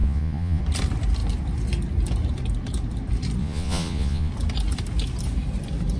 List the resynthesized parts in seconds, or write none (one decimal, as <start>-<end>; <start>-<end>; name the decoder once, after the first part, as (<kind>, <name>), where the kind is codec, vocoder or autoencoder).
0.0-0.6 (vocoder, Vocos); 3.4-4.3

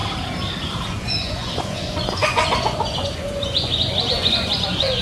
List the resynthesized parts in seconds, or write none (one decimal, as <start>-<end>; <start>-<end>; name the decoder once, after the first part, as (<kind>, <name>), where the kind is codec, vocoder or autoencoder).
0.9-5.0 (vocoder, Vocos)